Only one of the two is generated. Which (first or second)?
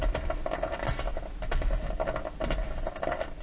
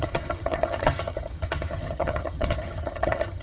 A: second